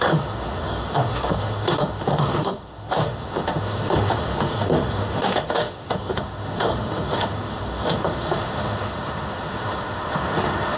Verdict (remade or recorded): remade